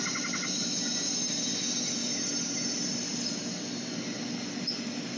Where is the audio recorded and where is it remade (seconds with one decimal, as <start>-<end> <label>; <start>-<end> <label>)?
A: 0.0-5.2 recorded

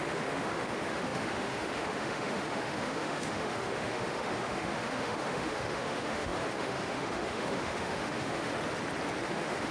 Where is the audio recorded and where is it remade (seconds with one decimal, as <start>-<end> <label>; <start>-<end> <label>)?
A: 0.0-8.5 remade; 8.5-9.2 recorded; 9.2-9.7 remade

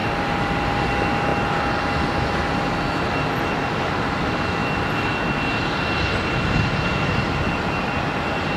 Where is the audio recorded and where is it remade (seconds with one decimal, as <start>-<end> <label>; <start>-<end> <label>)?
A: 0.0-0.9 remade; 0.9-6.9 recorded; 6.9-7.5 remade; 7.5-8.6 recorded

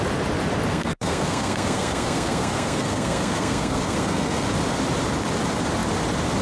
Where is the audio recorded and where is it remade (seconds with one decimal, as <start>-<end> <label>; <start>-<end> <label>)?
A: 0.0-0.7 recorded; 0.7-4.5 remade; 4.5-6.4 recorded